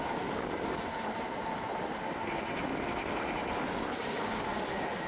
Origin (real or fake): real